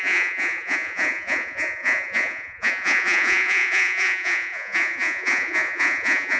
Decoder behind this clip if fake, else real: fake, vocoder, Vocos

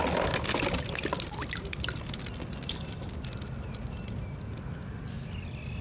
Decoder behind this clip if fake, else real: real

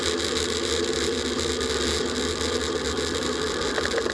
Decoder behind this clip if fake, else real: real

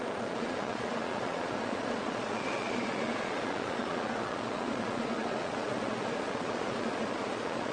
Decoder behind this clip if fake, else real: fake, vocoder, Vocos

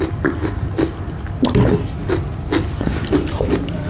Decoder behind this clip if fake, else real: real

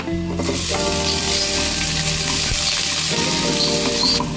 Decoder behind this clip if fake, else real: real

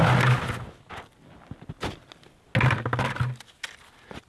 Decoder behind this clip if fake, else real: real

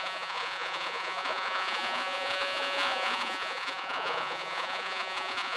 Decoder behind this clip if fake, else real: fake, vocoder, Vocos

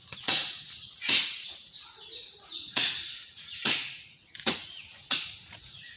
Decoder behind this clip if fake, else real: fake, vocoder, Vocos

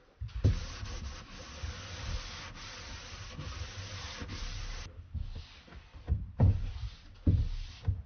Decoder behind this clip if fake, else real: real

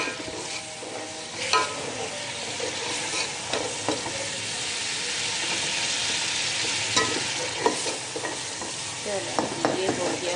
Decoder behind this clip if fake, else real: real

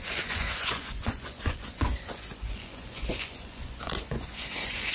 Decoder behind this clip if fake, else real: fake, vocoder, Vocos